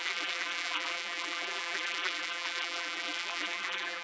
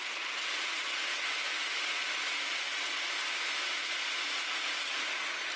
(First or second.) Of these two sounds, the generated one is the first